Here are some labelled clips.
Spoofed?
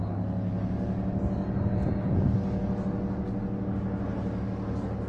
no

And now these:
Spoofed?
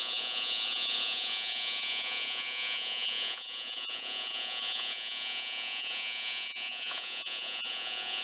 yes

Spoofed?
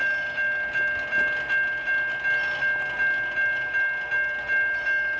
no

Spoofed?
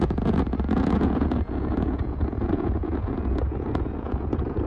yes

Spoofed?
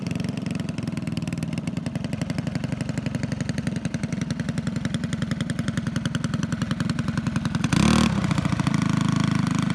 no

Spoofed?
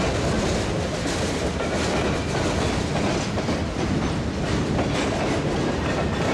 no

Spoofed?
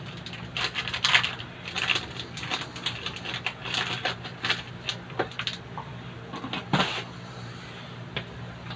no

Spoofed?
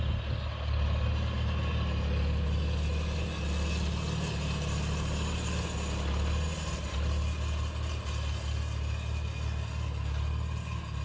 no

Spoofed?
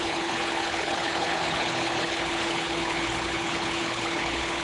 yes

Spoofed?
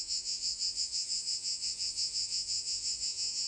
yes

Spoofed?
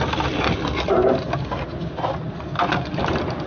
no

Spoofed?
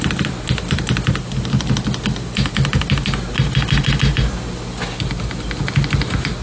no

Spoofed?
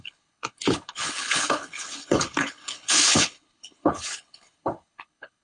yes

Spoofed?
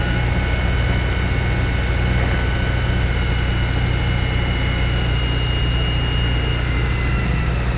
no